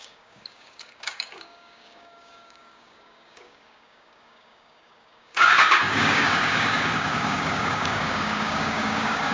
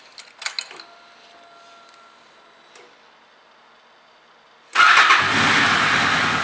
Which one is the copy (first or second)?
first